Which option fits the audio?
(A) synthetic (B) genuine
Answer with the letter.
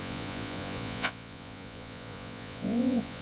A